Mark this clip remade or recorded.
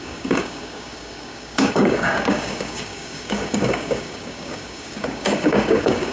remade